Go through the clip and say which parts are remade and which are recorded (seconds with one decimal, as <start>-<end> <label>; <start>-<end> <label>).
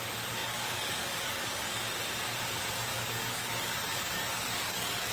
0.0-0.4 recorded; 0.4-1.8 remade; 1.8-2.9 recorded; 2.9-5.1 remade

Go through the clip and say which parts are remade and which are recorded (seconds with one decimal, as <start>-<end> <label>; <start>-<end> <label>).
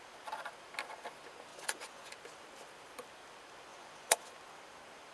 0.0-1.5 recorded; 1.5-2.1 remade; 2.1-3.7 recorded; 3.7-4.3 remade; 4.3-5.1 recorded